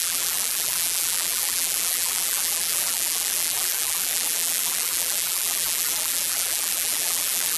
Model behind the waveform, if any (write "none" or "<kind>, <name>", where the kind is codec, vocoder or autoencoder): vocoder, BigVGAN v2